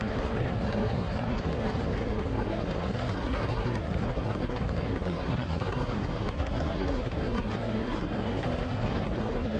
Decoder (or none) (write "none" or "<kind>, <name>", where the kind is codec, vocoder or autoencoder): codec, SNAC